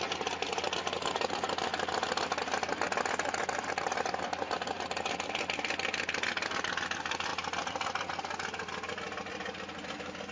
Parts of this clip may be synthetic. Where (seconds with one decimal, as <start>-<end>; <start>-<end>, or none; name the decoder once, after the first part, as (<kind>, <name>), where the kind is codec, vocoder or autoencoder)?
none